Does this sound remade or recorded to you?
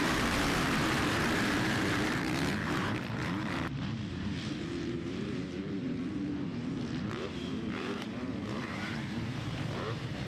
remade